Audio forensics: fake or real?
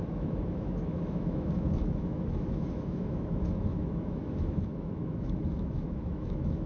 fake